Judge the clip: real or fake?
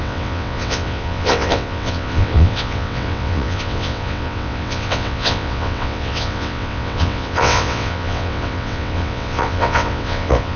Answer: fake